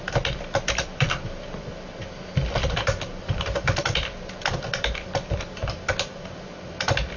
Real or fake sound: fake